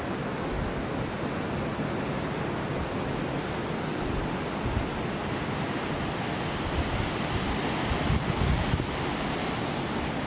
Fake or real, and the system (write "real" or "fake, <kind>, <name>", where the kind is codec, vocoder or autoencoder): real